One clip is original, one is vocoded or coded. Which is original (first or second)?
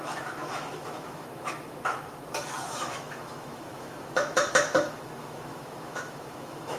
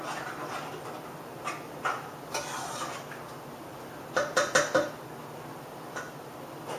second